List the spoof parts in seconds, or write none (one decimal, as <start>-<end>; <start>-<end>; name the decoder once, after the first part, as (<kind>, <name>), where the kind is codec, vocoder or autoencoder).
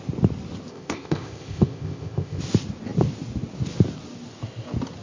0.7-2.4 (codec, ZipCodec)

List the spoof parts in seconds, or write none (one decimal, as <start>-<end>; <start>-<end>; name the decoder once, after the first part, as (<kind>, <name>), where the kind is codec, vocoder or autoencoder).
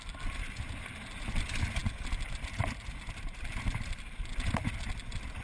none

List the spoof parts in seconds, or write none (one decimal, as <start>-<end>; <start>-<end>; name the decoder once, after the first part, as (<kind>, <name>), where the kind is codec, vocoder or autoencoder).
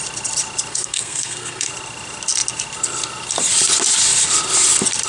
0.7-1.7 (codec, SNAC)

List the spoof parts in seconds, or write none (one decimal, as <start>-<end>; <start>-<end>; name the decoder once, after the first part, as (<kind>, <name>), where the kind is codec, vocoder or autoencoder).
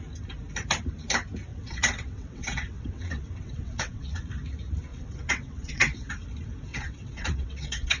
1.5-4.2 (vocoder, WaveNeXt); 4.9-6.1; 6.7-8.0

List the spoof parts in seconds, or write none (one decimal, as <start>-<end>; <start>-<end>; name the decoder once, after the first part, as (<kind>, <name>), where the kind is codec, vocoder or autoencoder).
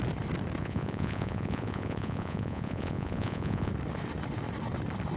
0.6-3.7 (vocoder, Vocos)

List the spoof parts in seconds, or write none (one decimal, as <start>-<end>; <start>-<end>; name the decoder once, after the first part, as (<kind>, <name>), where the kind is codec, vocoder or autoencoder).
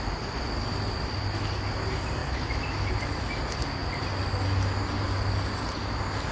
2.2-2.9 (autoencoder, DAC-VAE)